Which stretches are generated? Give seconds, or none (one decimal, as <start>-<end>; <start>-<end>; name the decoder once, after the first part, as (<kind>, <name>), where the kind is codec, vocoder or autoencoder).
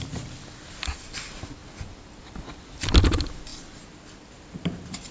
none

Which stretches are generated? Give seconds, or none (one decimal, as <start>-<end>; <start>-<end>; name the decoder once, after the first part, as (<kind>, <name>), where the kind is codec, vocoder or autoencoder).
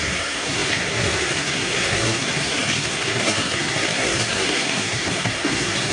0.0-5.9 (codec, SNAC)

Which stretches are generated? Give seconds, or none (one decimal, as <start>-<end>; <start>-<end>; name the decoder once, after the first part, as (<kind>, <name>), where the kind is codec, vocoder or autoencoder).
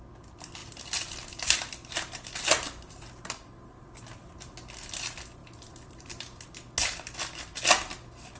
none